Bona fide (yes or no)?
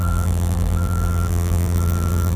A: no